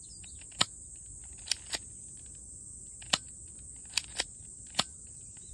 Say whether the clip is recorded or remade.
recorded